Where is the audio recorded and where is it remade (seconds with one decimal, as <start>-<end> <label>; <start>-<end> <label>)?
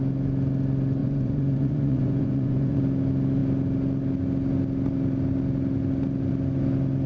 0.0-1.0 recorded; 1.0-2.8 remade; 2.8-7.1 recorded